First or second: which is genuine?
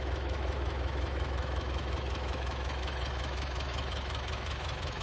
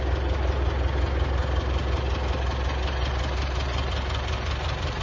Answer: second